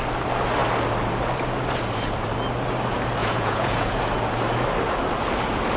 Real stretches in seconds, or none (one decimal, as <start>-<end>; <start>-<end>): 0.0-3.2; 4.0-5.8